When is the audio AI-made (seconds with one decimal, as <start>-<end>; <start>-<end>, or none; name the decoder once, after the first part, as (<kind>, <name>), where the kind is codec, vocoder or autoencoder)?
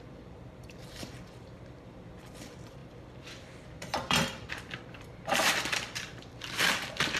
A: 0.0-7.2 (vocoder, BigVGAN v2)